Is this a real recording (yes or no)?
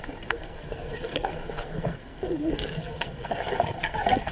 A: no